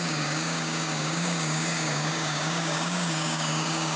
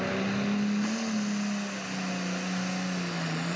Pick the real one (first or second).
second